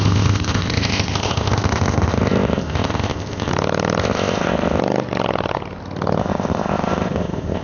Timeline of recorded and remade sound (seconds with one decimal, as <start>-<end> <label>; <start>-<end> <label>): 0.0-3.5 remade; 3.5-4.0 recorded; 4.0-4.8 remade; 4.8-6.2 recorded; 6.2-7.6 remade